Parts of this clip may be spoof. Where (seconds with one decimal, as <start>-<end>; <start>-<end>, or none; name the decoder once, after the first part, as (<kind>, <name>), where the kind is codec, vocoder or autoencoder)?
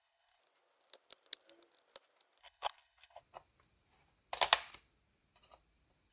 0.0-0.4 (codec, HILCodec); 2.4-3.2